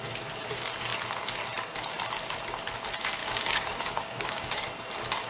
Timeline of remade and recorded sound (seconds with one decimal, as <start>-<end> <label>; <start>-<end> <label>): 0.0-3.2 recorded; 3.2-4.6 remade; 4.6-5.3 recorded